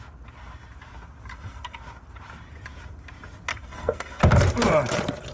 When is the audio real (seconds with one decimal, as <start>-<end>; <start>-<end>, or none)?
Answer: 0.0-1.3; 1.8-3.5; 4.2-5.3